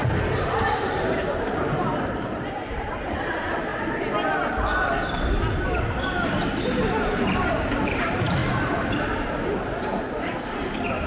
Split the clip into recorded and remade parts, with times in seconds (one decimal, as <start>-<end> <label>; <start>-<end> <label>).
0.0-3.7 remade; 3.7-7.5 recorded; 7.5-8.4 remade; 8.4-11.1 recorded